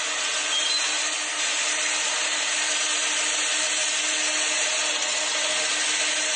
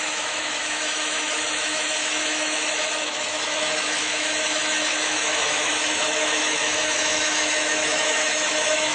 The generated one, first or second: second